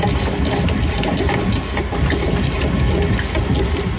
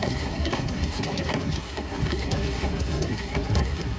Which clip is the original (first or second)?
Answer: first